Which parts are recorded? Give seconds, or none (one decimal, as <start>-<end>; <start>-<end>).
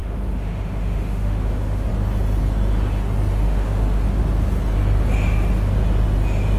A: 1.9-3.3; 4.2-6.6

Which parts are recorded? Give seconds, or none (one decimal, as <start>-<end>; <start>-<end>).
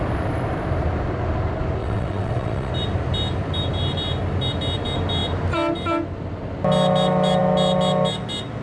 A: 0.0-1.8; 2.7-8.6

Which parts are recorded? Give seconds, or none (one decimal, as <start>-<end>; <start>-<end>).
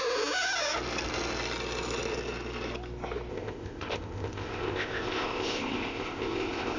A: 0.0-3.3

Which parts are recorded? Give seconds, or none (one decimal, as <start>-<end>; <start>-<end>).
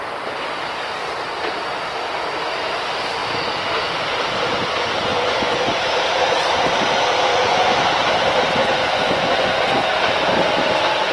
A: 0.0-5.1; 5.8-7.3; 7.8-8.6; 9.8-11.1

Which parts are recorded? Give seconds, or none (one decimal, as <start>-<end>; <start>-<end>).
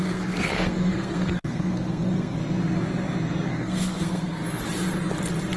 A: 2.4-3.5; 4.4-5.6